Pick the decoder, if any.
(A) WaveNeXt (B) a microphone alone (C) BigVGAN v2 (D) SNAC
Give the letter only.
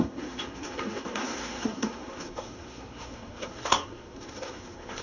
D